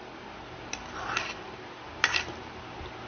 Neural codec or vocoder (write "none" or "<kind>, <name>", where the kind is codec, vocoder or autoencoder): none